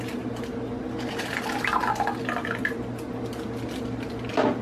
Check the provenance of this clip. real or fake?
real